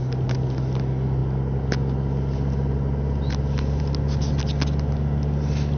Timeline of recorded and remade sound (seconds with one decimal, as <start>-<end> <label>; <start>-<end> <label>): 0.0-5.8 recorded